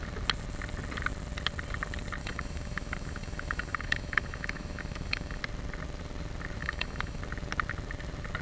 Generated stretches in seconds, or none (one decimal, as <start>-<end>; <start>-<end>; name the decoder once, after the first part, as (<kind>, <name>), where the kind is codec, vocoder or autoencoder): 2.2-5.4 (autoencoder, DAC-VAE); 6.6-7.2